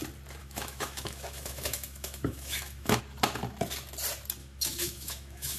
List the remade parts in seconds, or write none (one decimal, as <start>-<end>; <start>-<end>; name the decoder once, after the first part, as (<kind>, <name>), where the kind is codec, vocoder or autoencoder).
0.4-3.0 (autoencoder, DAC-VAE); 4.4-5.6